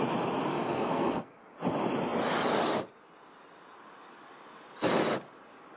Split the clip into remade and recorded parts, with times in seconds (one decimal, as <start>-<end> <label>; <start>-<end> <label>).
0.0-0.5 recorded; 0.5-1.4 remade; 1.4-5.8 recorded